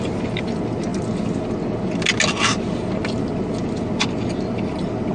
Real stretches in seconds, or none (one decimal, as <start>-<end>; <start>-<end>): 0.0-5.1